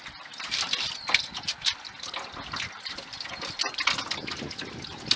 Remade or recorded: recorded